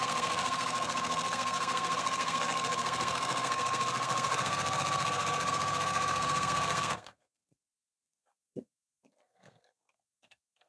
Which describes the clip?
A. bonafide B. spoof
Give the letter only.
B